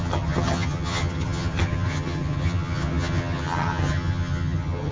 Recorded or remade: remade